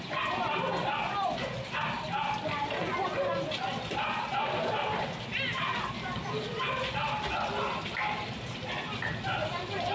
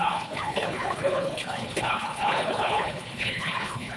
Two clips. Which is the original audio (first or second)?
first